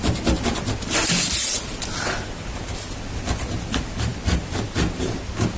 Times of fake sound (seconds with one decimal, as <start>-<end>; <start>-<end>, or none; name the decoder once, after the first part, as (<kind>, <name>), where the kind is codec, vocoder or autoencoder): none